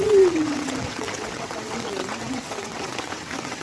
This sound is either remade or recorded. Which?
remade